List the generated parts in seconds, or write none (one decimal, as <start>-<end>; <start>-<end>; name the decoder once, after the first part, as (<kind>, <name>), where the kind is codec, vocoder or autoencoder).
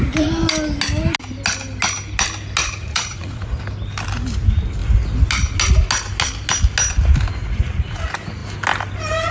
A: 2.6-3.6 (vocoder, Vocos); 7.4-8.0